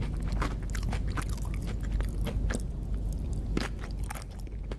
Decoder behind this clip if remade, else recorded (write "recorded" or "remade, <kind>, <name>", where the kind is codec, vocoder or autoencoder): recorded